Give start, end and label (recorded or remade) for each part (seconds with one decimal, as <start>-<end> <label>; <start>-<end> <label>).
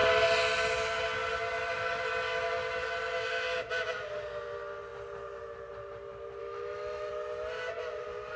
0.0-6.4 recorded; 6.4-7.1 remade; 7.1-8.4 recorded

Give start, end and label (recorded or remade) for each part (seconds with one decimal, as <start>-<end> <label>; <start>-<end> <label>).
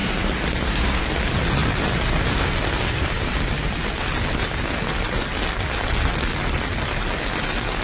0.0-7.8 recorded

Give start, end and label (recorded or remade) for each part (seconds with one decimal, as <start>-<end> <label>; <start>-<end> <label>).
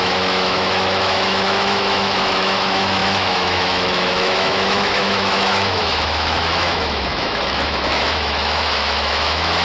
0.0-9.6 remade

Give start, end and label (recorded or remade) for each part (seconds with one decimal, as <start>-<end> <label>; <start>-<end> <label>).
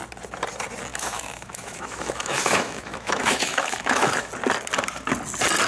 0.0-0.9 recorded; 0.9-4.3 remade; 4.3-5.7 recorded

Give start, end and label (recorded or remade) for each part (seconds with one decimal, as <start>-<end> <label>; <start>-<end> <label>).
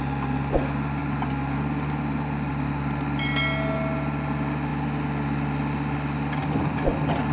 0.0-7.3 recorded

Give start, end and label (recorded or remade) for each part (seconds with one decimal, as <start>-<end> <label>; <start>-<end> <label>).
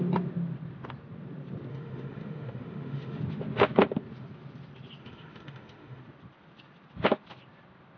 0.0-1.7 recorded; 1.7-3.2 remade; 3.2-5.0 recorded; 5.0-6.0 remade; 6.0-8.0 recorded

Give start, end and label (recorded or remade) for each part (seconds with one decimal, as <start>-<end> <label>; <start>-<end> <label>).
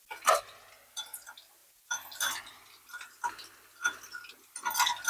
0.0-5.1 recorded